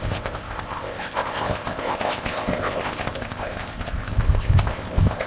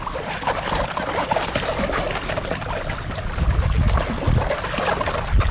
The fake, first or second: first